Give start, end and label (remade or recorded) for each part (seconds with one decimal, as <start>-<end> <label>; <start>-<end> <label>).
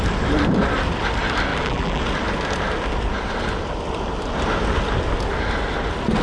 0.0-1.5 recorded; 1.5-2.0 remade; 2.0-6.2 recorded